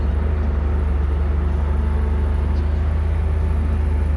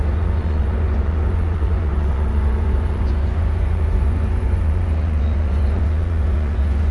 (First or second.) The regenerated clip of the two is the second